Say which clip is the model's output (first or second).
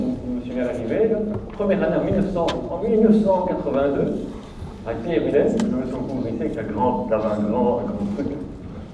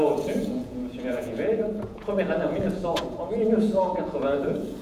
second